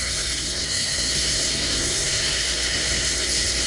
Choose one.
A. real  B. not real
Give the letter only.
B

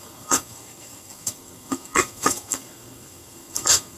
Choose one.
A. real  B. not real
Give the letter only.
B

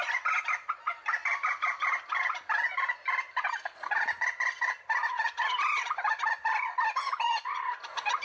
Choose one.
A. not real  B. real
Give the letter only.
B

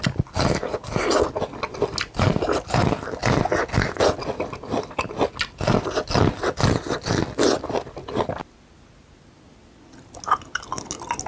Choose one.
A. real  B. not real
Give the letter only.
A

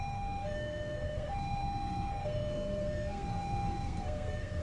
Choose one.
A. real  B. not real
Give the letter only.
B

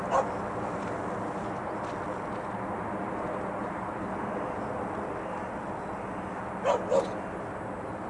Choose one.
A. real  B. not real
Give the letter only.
A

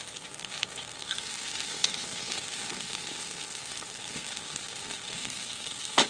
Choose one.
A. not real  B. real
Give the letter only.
A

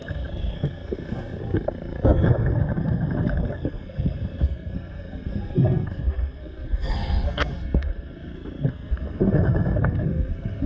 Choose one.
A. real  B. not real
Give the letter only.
B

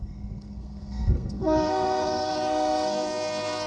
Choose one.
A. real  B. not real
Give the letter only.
B